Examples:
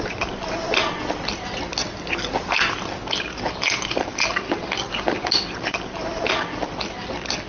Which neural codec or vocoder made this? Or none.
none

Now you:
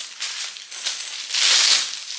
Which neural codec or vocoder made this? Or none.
none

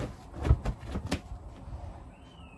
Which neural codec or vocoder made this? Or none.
none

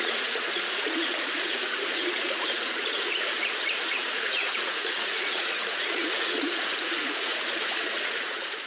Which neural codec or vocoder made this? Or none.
vocoder, Vocos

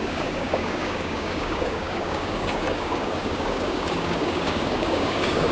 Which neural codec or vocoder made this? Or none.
codec, DAC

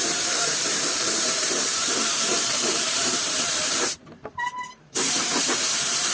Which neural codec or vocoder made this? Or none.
vocoder, BigVGAN v2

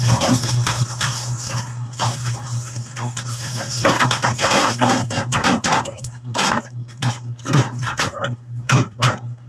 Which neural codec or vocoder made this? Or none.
codec, SNAC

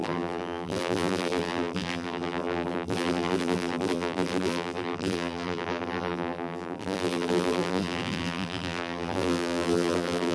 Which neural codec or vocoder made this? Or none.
vocoder, BigVGAN v2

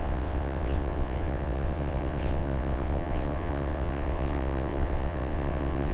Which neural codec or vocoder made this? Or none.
vocoder, WaveNeXt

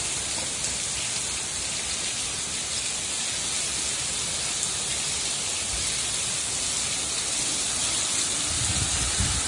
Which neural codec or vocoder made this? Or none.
none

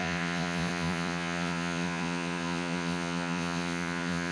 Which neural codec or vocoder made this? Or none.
vocoder, Vocos